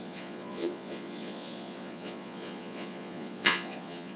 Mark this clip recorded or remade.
remade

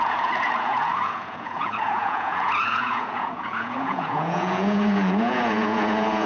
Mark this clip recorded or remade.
remade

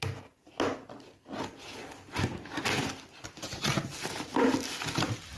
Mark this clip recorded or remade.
recorded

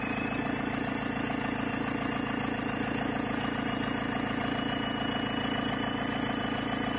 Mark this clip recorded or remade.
recorded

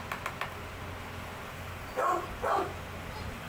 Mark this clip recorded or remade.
recorded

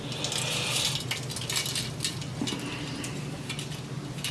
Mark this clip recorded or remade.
recorded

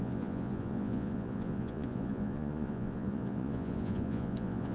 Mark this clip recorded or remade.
remade